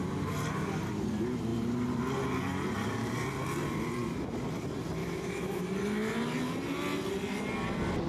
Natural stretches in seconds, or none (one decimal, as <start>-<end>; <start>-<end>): 0.0-5.0; 5.6-8.1